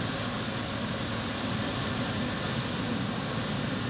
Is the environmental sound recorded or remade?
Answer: recorded